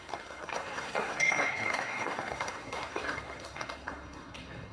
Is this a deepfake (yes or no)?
yes